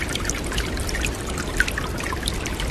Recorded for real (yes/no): no